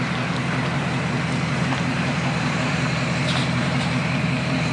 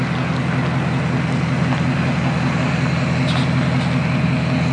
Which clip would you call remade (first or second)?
first